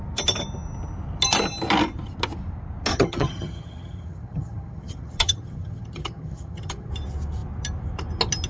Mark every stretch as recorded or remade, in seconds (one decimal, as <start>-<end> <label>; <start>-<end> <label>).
0.0-2.9 recorded; 2.9-6.9 remade; 6.9-8.5 recorded